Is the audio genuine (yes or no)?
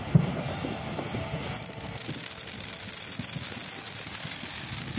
yes